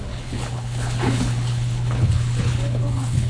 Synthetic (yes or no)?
yes